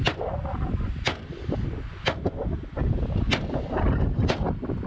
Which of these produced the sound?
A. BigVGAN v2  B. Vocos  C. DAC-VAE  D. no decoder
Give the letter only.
D